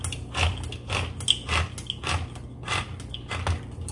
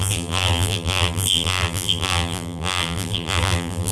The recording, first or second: first